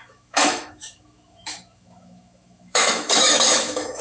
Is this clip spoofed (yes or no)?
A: yes